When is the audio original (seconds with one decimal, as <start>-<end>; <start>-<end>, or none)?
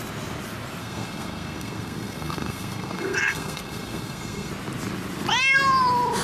0.0-0.8; 4.5-6.2